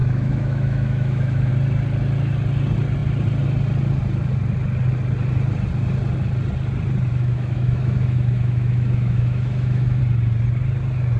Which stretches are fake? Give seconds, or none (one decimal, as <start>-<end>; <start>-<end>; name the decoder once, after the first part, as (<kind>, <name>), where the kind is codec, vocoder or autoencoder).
0.0-1.5 (autoencoder, DAC-VAE); 7.1-10.0